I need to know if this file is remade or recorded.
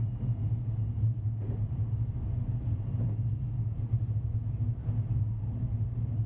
recorded